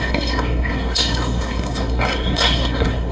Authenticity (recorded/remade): remade